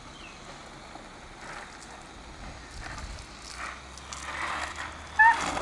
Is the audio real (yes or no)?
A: yes